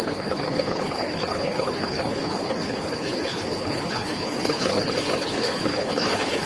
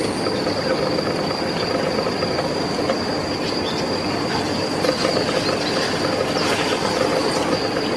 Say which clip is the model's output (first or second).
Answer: first